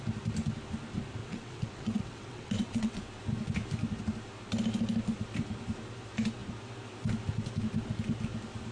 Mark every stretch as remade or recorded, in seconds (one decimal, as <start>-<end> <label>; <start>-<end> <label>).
0.0-1.2 recorded; 1.2-3.0 remade; 3.0-8.7 recorded